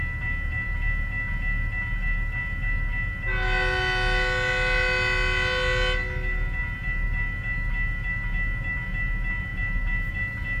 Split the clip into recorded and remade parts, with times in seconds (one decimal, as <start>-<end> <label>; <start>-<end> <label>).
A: 0.0-10.6 recorded